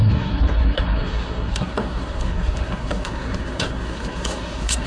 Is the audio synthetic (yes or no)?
yes